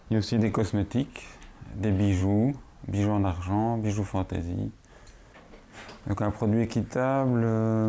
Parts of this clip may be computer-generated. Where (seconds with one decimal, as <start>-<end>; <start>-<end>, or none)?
0.0-0.7